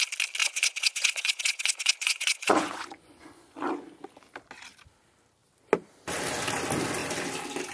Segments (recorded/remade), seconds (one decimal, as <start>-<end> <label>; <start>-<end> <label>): 0.0-0.4 recorded; 0.4-3.7 remade; 3.7-7.7 recorded